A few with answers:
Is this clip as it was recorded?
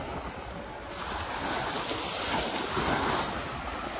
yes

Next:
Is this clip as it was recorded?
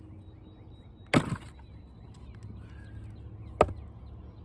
yes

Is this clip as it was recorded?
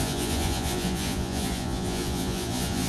no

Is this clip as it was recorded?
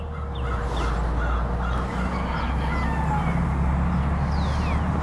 yes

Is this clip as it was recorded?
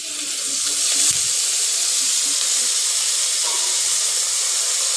yes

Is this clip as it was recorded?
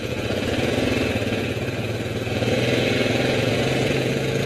no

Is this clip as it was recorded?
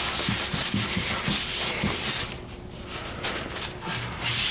yes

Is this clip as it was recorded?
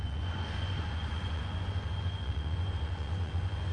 no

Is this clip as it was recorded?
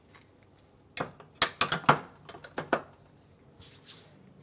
yes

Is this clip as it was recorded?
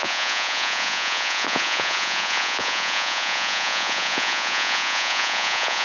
no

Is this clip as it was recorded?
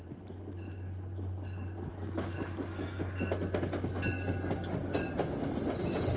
yes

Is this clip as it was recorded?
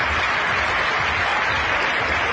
yes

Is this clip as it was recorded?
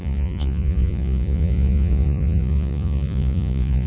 no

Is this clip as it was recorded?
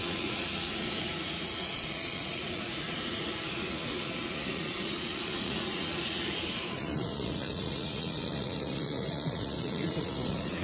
no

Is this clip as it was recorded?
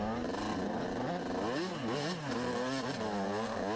yes